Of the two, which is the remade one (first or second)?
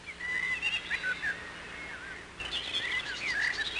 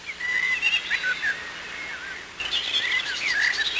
second